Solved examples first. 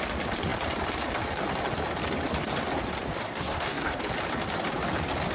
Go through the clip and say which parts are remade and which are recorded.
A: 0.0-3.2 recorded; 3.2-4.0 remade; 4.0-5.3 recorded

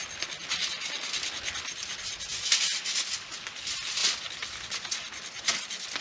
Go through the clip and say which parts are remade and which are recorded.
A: 0.0-6.0 recorded